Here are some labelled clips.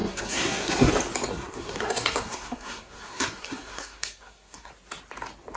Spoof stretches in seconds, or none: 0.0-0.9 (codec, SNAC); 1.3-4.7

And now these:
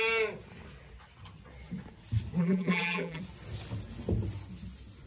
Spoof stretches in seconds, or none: 2.4-3.2 (vocoder, BigVGAN v2)

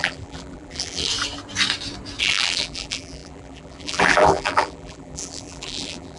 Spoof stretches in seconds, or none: 0.0-1.1 (vocoder, BigVGAN v2); 2.2-6.2

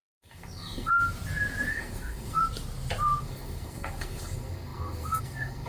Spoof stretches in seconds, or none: 0.0-0.9 (codec, SNAC); 1.7-2.4; 3.2-5.7

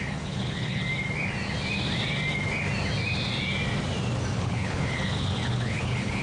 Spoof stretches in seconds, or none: 0.0-0.8 (codec, HILCodec); 4.4-6.2